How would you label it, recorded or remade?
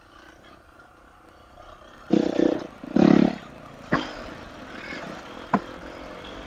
recorded